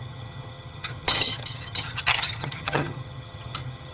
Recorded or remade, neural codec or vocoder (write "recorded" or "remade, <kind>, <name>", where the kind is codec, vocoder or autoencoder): remade, vocoder, HiFi-GAN